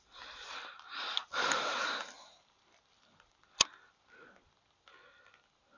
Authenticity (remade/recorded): recorded